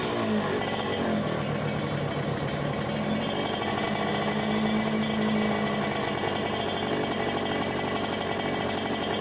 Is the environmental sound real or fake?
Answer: real